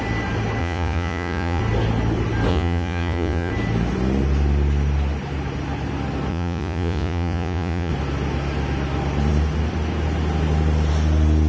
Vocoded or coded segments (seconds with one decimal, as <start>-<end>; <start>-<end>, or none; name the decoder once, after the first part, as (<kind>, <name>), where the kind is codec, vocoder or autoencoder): 0.6-1.6 (vocoder, Vocos); 2.5-3.5; 6.3-7.9